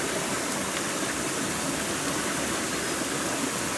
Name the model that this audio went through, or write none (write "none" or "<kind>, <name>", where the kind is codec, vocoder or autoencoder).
none